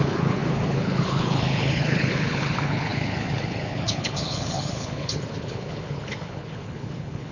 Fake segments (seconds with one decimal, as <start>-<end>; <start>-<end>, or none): 0.0-7.3